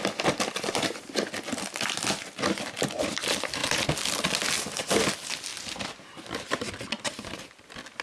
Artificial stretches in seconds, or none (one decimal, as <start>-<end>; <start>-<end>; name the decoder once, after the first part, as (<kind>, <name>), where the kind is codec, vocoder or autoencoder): none